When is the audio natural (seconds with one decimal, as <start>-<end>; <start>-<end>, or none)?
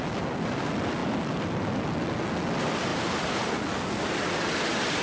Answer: 0.0-2.9; 3.6-5.0